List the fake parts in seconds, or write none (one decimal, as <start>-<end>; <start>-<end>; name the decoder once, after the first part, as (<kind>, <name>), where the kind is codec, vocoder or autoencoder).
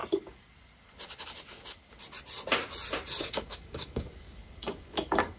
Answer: 3.2-5.4 (codec, DAC)